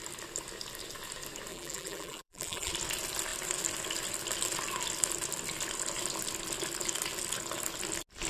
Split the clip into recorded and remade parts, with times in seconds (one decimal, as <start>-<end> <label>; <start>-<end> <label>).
0.0-1.5 recorded; 1.5-2.7 remade; 2.7-8.3 recorded